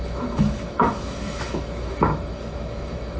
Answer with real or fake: fake